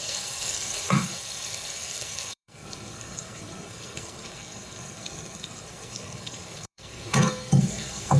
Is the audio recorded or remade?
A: remade